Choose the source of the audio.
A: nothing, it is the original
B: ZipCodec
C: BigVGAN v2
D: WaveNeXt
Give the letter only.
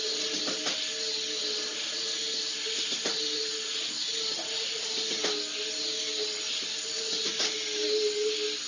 A